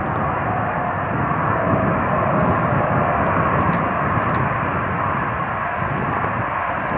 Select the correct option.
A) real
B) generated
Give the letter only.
A